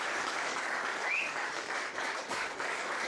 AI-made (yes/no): yes